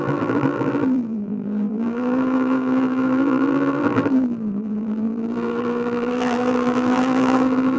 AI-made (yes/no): yes